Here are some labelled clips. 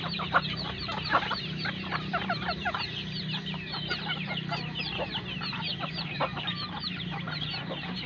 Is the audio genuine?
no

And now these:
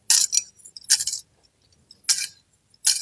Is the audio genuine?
yes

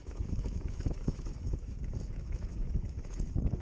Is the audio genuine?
no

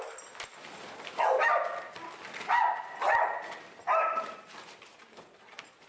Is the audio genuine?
yes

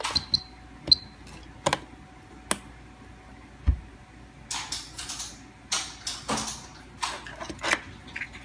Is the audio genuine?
yes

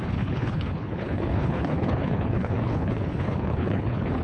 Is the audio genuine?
no